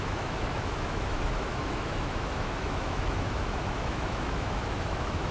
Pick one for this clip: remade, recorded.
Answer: remade